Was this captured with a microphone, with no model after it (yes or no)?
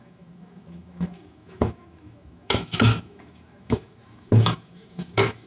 no